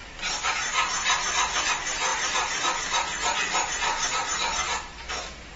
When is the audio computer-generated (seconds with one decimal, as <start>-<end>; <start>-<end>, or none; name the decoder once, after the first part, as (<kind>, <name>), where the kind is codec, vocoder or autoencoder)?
none